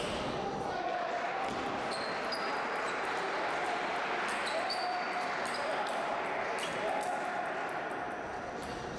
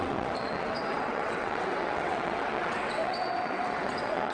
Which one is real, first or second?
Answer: first